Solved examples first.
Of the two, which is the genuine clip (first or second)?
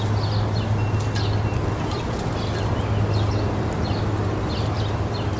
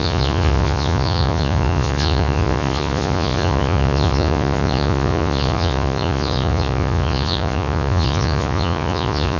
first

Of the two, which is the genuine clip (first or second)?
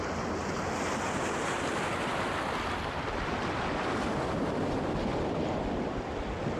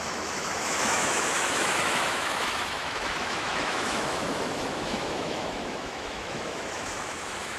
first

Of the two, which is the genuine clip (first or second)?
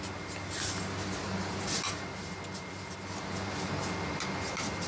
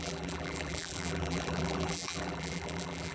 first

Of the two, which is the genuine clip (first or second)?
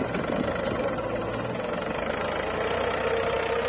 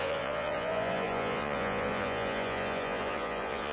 first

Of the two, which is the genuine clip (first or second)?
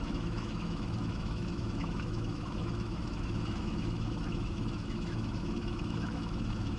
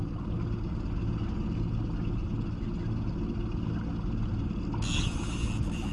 second